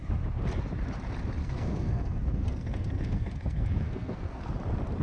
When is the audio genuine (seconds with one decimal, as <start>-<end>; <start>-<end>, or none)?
0.0-1.4; 4.4-5.0